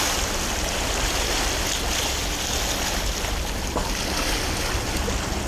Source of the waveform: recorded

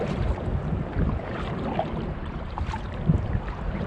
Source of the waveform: remade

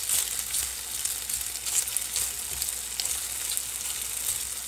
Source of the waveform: recorded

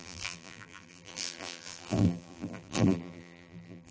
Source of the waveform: remade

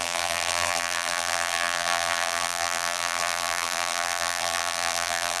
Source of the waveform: remade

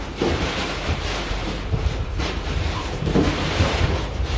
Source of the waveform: remade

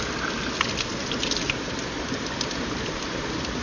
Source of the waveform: recorded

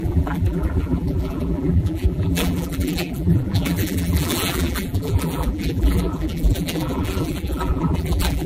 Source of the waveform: remade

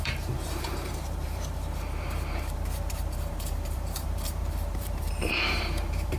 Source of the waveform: remade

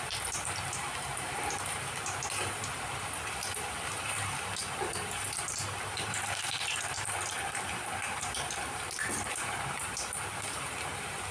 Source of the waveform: remade